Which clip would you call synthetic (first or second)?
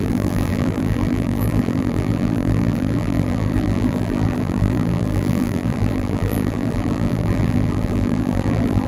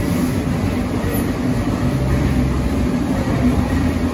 first